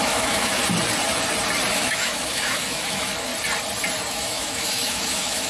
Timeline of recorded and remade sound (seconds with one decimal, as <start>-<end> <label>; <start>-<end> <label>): 0.0-0.6 remade; 0.6-1.7 recorded; 1.7-3.3 remade; 3.3-4.1 recorded; 4.1-5.5 remade